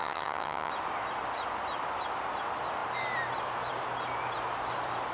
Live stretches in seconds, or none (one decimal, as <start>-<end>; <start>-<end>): 0.7-5.1